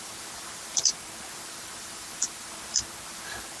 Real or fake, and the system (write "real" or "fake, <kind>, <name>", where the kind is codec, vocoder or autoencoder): fake, vocoder, BigVGAN v2